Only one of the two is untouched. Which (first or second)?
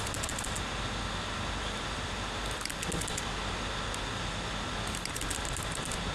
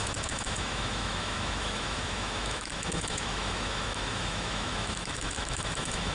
first